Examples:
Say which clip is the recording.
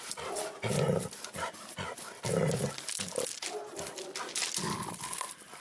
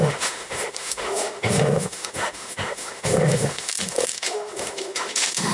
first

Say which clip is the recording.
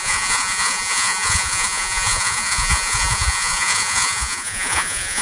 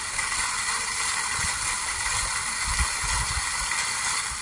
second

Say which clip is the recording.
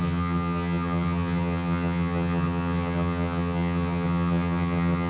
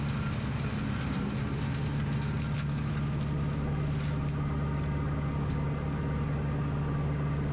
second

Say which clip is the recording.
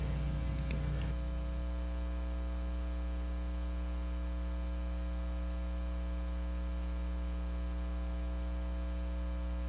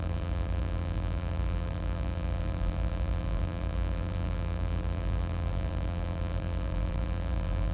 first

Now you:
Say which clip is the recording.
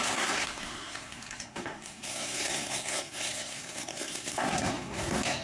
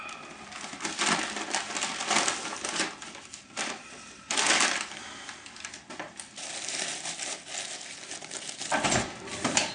second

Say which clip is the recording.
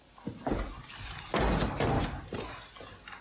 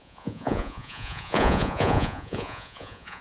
first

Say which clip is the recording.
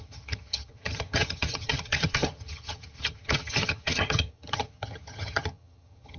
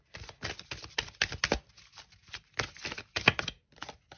second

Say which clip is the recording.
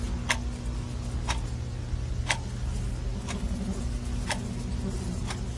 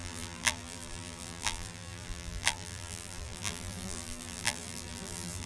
first